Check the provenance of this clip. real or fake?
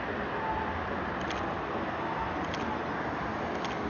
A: real